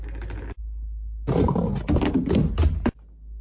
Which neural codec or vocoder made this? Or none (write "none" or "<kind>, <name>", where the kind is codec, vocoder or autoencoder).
none